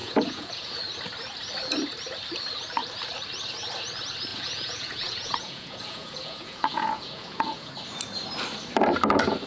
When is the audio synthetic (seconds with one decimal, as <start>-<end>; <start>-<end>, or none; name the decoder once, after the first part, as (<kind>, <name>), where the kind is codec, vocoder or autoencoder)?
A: 0.0-0.8 (vocoder, Vocos); 4.3-7.7